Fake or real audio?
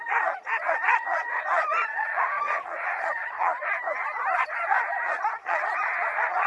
fake